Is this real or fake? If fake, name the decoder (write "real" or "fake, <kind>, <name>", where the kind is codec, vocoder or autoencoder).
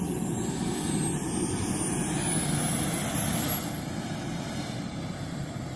real